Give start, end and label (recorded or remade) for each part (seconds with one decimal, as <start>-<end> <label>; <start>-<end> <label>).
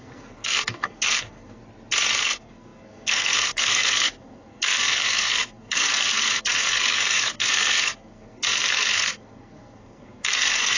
0.0-1.6 remade; 1.6-2.2 recorded; 2.2-10.8 remade